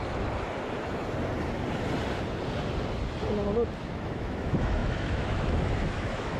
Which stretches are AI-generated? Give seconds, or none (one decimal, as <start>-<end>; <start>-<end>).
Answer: 3.8-6.4